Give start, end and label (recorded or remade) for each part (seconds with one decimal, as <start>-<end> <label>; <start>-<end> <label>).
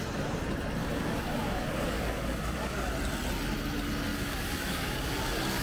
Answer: 0.0-0.8 recorded; 0.8-2.9 remade; 2.9-4.1 recorded; 4.1-5.6 remade